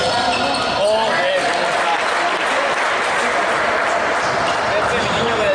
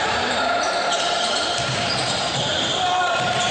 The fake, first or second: second